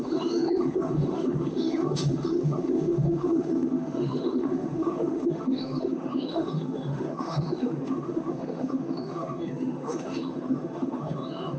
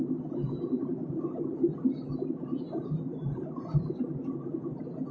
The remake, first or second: first